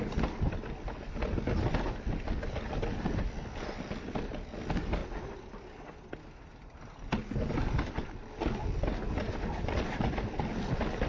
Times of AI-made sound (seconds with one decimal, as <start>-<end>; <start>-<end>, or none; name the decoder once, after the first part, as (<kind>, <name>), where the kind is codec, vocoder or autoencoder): none